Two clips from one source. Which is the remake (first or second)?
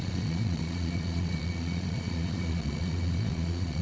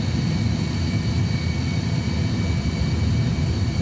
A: first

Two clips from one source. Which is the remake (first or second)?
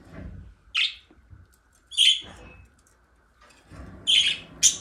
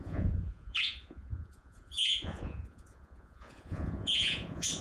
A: second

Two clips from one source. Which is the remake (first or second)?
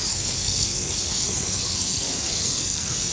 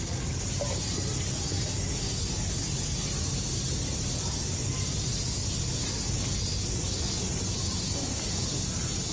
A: first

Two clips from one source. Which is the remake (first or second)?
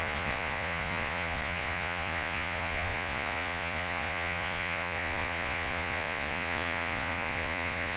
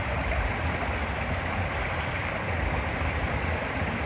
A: first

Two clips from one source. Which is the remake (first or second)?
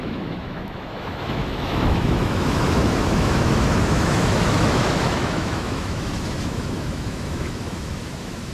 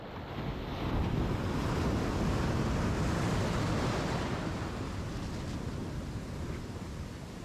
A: first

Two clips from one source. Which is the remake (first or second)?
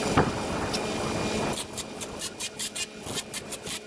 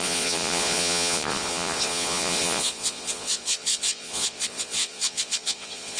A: second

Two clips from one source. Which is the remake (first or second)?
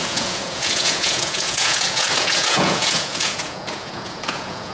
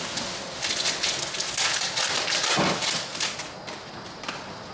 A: first